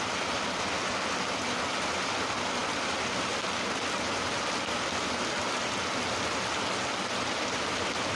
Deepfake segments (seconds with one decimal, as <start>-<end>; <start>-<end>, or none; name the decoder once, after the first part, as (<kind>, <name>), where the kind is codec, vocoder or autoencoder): none